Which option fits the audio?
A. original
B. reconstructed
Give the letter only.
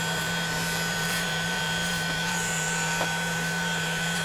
B